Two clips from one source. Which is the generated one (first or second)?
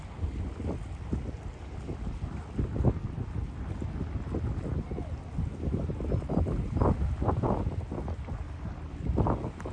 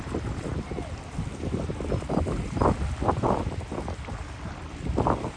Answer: second